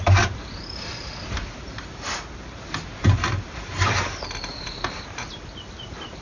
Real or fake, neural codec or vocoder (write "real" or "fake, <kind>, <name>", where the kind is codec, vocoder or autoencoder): real